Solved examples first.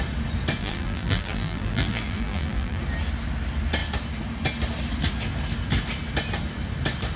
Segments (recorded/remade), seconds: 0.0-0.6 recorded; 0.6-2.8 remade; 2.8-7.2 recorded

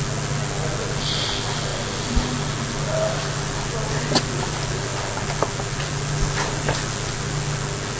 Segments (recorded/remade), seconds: 0.0-8.0 recorded

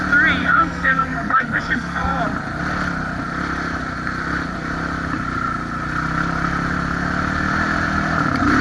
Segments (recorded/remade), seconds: 0.0-0.4 recorded; 0.4-2.2 remade; 2.2-8.6 recorded

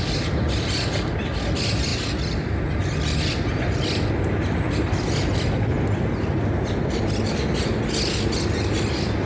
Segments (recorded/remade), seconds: 0.0-9.3 recorded

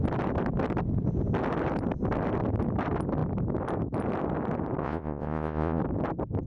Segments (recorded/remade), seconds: 0.0-4.8 recorded; 4.8-5.8 remade; 5.8-6.5 recorded

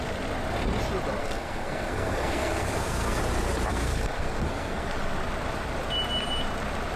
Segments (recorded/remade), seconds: 0.0-1.2 recorded; 1.2-3.2 remade; 3.2-3.7 recorded; 3.7-4.9 remade; 4.9-7.0 recorded

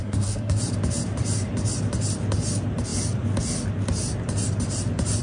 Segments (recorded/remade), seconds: 0.0-0.6 remade; 0.6-5.2 recorded